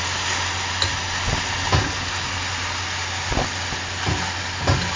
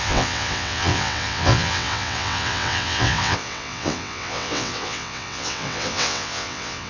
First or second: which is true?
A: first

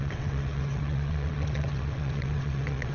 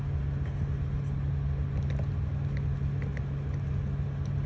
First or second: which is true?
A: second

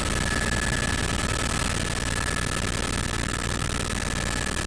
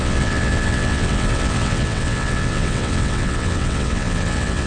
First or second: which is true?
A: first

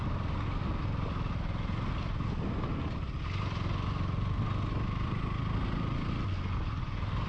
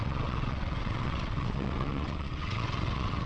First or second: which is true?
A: first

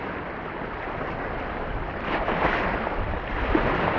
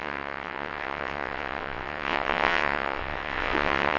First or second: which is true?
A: first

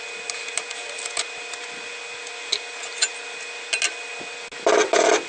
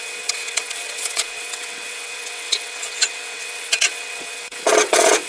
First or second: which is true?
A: first